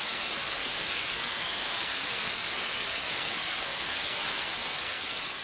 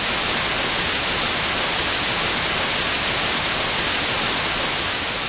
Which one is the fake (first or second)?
first